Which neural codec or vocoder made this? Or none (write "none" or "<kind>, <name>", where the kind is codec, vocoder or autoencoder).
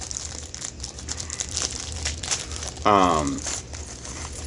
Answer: vocoder, BigVGAN v2